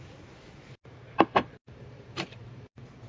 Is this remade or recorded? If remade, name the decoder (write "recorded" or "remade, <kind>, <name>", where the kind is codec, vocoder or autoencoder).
remade, vocoder, BigVGAN v2